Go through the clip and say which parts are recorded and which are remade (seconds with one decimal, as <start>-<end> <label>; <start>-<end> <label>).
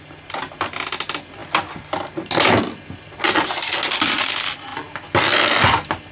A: 0.0-6.1 recorded